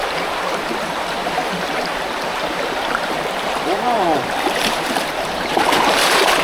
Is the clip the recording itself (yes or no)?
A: no